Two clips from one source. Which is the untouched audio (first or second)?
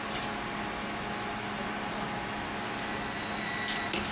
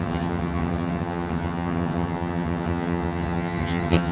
first